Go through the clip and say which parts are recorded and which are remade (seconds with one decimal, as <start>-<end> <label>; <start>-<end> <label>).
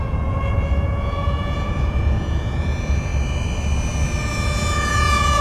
0.0-3.1 remade; 3.1-4.2 recorded; 4.2-5.4 remade